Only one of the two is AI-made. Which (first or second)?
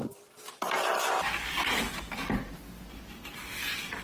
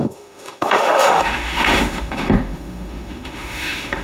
second